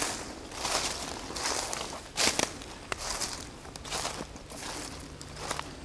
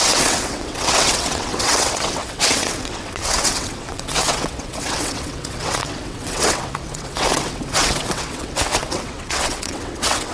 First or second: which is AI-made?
second